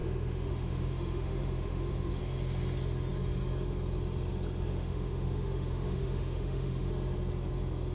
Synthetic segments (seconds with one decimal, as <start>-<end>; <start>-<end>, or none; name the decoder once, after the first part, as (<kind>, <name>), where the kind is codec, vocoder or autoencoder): 0.0-2.2 (autoencoder, DAC-VAE); 4.7-6.9